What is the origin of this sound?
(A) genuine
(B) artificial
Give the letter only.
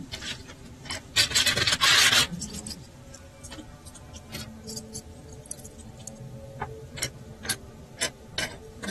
A